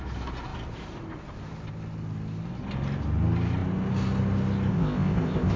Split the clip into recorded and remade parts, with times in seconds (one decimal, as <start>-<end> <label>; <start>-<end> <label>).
0.0-4.7 recorded; 4.7-5.6 remade